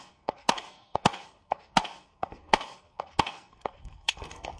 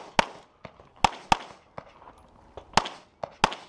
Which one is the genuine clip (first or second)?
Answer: second